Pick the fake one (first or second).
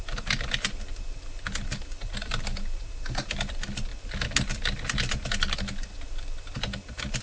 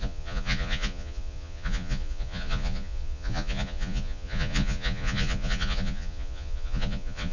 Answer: second